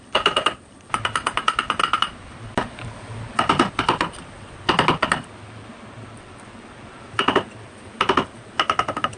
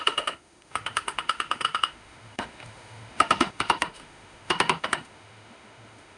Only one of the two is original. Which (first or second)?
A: first